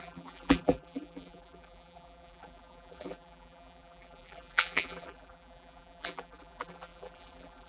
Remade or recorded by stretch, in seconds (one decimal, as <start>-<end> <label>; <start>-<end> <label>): 0.0-7.7 remade